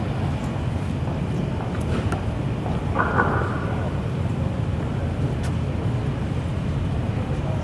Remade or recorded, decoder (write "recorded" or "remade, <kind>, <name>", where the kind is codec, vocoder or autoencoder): recorded